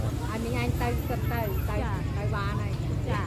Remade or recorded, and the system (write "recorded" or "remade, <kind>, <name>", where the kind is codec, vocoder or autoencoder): recorded